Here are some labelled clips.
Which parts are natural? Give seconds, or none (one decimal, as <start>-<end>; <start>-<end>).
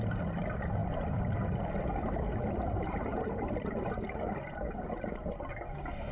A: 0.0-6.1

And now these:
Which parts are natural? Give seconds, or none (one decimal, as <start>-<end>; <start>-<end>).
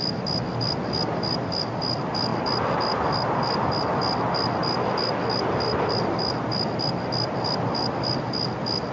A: 0.0-8.9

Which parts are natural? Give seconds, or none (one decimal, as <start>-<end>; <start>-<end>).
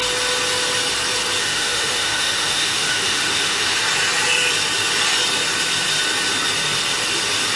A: 0.0-1.4; 3.8-7.6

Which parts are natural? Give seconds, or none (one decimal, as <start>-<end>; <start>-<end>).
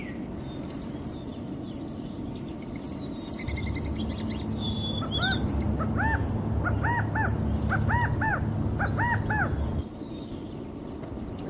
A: 0.0-11.5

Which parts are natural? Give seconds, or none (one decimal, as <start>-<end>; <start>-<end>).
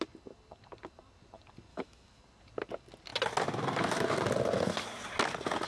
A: 0.0-1.7; 2.2-5.7